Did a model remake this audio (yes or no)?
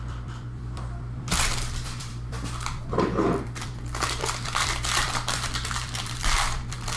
yes